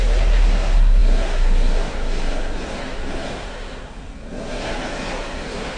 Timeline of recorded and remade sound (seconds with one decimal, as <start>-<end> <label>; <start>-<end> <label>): 0.0-5.8 remade